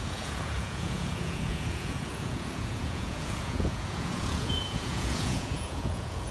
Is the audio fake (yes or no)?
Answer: yes